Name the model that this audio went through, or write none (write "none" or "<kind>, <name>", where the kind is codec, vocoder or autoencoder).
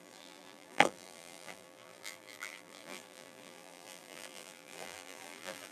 vocoder, BigVGAN v2